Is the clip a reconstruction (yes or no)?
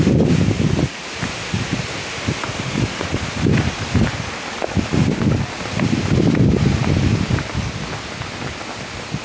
no